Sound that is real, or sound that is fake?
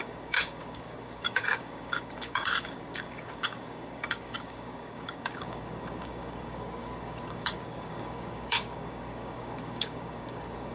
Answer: fake